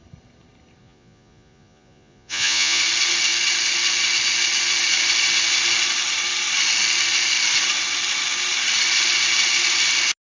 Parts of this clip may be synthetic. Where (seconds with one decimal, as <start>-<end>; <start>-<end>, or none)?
0.8-2.8